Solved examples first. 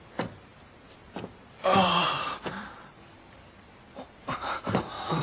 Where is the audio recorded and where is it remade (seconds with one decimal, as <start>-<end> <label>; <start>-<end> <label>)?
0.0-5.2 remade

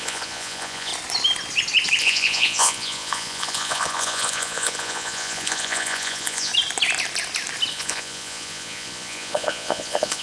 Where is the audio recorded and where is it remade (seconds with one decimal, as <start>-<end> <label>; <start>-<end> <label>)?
0.0-0.9 remade; 0.9-2.0 recorded; 2.0-6.5 remade; 6.5-7.7 recorded; 7.7-10.2 remade

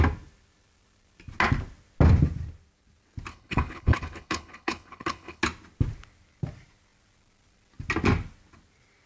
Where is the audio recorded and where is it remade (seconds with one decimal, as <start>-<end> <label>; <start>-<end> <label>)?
0.0-3.3 recorded; 3.3-5.4 remade; 5.4-9.1 recorded

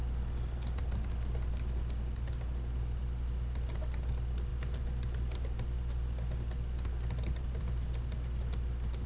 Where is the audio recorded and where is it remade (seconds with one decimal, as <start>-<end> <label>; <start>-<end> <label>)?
0.0-9.1 recorded

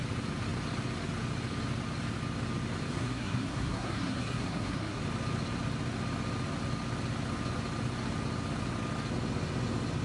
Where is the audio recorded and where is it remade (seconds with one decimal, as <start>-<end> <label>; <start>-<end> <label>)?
0.0-2.9 recorded; 2.9-5.0 remade; 5.0-10.0 recorded

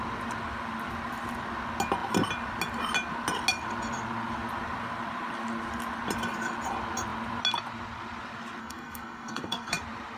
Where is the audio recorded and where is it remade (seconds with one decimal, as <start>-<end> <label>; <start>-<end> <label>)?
0.0-8.6 recorded; 8.6-9.7 remade; 9.7-10.2 recorded

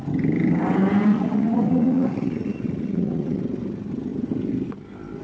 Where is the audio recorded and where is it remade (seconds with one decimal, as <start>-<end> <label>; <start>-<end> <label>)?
0.0-1.1 recorded; 1.1-3.4 remade; 3.4-5.2 recorded